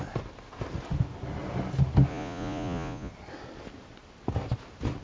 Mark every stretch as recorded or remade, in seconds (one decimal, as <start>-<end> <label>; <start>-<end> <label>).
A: 0.0-2.1 recorded; 2.1-3.1 remade; 3.1-5.0 recorded